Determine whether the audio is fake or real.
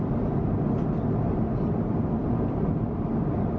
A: real